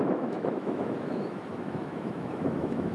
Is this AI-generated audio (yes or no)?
yes